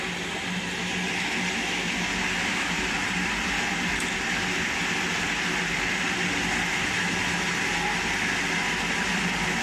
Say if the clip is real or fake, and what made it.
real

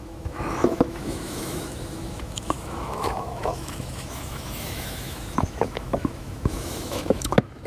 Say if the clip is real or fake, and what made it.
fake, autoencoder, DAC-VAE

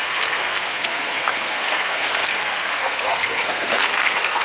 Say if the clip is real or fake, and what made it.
fake, codec, SNAC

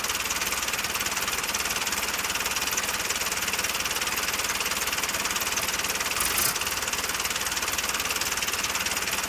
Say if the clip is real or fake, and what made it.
real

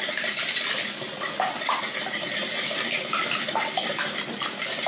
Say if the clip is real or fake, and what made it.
real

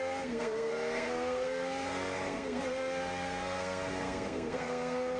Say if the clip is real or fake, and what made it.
fake, codec, SNAC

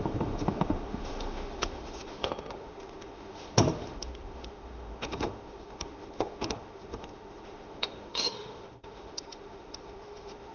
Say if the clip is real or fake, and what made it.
fake, autoencoder, DAC-VAE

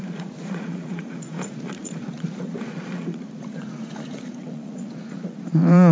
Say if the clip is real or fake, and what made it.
fake, vocoder, Vocos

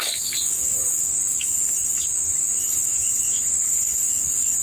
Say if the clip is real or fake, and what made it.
fake, codec, DAC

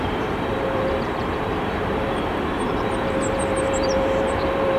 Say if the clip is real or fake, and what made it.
fake, vocoder, BigVGAN v2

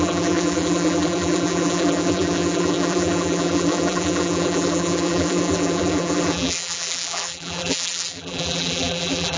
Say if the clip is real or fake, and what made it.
fake, vocoder, BigVGAN v2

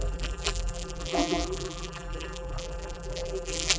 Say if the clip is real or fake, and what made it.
fake, vocoder, BigVGAN v2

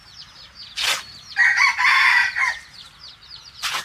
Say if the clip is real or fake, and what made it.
real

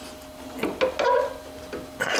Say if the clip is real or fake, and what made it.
real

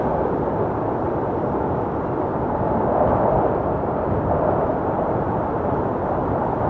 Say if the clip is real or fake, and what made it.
real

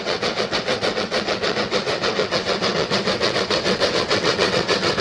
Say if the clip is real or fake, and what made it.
fake, vocoder, WaveNeXt